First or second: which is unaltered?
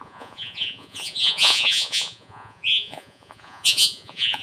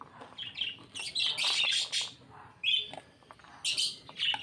second